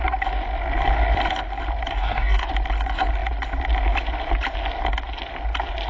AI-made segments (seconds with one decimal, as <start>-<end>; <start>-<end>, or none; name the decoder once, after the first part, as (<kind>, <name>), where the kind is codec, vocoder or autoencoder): 1.9-2.5 (codec, SNAC)